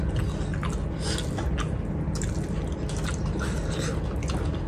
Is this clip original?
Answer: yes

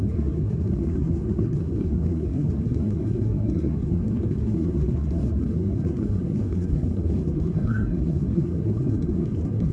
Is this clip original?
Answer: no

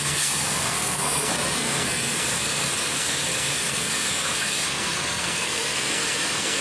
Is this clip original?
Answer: no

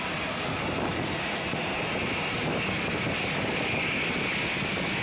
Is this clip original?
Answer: yes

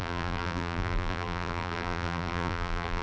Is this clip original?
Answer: no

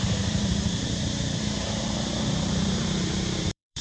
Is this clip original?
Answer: no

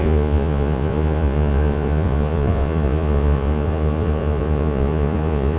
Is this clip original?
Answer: no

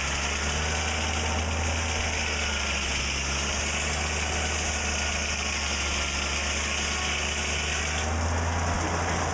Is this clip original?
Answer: yes